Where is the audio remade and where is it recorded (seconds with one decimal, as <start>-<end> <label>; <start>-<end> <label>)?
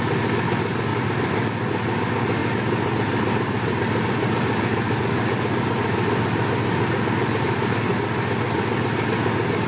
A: 0.0-0.9 recorded; 0.9-1.5 remade; 1.5-2.4 recorded; 2.4-5.5 remade; 5.5-9.7 recorded